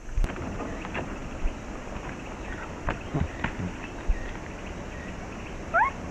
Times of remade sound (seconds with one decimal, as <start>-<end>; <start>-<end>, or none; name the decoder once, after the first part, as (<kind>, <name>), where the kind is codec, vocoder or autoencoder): none